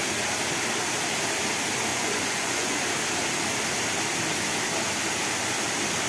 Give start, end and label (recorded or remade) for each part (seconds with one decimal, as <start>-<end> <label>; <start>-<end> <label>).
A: 0.0-1.9 recorded; 1.9-2.8 remade; 2.8-6.1 recorded